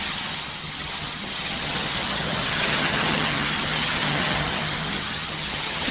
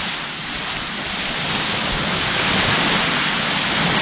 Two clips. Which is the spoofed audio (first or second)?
first